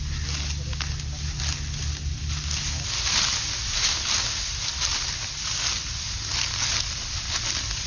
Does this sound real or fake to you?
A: real